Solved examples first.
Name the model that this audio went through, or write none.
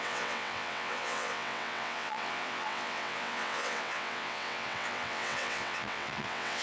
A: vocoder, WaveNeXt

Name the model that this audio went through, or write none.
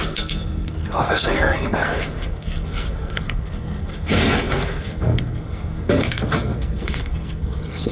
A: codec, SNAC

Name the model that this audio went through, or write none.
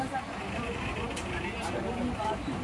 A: none